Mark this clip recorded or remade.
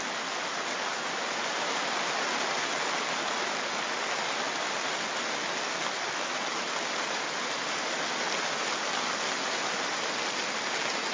recorded